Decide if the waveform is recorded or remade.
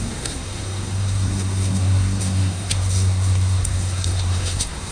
remade